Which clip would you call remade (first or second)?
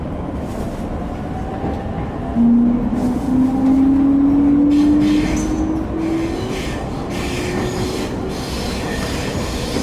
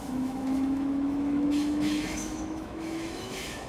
second